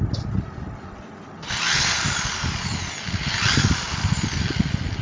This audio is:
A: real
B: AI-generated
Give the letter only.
A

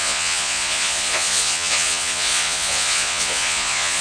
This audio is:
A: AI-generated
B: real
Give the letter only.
A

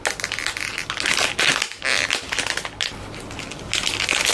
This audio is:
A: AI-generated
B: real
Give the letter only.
B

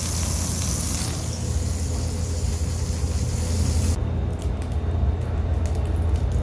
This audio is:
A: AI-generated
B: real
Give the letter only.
B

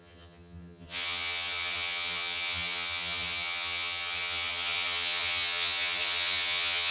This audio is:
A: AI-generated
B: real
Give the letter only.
A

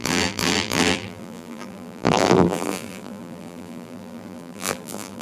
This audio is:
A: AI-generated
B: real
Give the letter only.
A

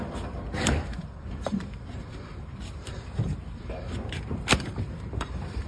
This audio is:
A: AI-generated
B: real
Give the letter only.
A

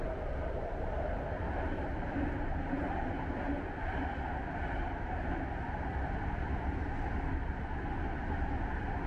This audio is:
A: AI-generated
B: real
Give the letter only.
B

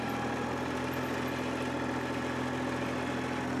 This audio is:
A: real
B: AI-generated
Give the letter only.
A